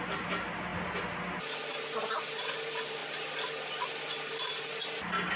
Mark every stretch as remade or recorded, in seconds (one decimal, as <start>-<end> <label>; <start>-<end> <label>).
0.0-5.4 recorded